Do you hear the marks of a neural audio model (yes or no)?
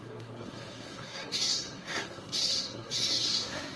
yes